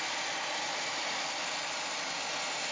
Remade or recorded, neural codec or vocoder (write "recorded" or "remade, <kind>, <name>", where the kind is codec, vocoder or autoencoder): recorded